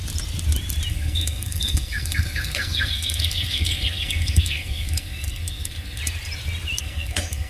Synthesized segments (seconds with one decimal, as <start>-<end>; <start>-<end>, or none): 0.9-6.0; 6.8-7.5